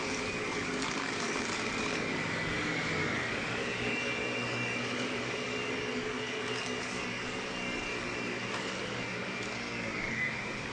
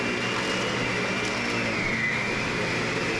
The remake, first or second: first